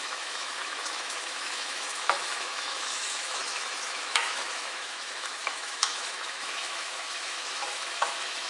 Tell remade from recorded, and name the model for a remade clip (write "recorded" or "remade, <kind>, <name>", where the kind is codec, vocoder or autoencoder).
remade, autoencoder, DAC-VAE